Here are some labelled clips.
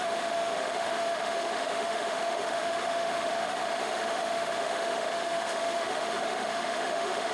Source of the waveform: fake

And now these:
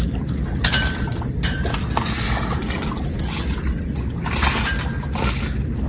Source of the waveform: real